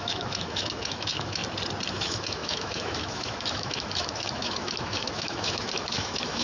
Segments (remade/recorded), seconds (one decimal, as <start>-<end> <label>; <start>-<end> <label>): 0.0-1.4 remade; 1.4-1.9 recorded; 1.9-6.4 remade